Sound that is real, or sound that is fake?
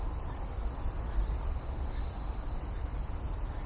real